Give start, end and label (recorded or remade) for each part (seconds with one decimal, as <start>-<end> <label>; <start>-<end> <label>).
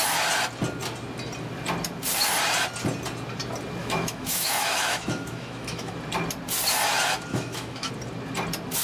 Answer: 0.0-3.8 recorded; 3.8-5.9 remade; 5.9-7.3 recorded; 7.3-7.9 remade; 7.9-8.8 recorded